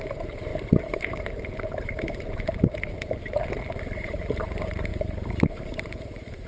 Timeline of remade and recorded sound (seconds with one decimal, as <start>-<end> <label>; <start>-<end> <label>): 0.0-6.5 remade